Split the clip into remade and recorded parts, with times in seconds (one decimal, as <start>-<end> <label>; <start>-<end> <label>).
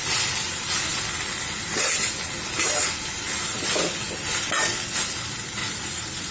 0.0-5.6 recorded; 5.6-6.3 remade